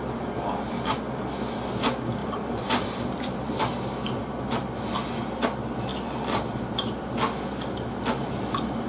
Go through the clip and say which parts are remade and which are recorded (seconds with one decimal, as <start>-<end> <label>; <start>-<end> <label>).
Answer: 0.0-2.2 recorded; 2.2-3.6 remade; 3.6-8.9 recorded